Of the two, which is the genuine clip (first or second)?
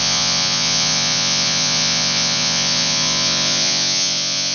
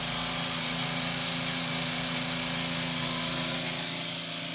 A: second